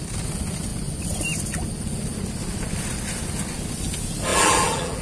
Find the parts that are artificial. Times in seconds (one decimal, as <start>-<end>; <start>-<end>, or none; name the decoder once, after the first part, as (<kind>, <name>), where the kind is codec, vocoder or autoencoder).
4.3-5.0 (vocoder, BigVGAN v2)